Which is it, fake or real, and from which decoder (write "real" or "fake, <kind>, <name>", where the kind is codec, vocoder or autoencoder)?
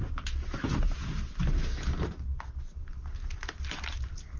real